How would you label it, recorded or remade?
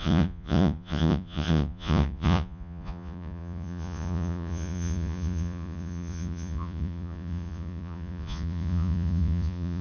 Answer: remade